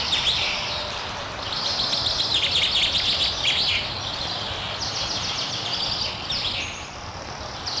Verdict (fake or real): real